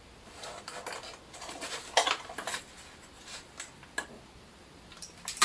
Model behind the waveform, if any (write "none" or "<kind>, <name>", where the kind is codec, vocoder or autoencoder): none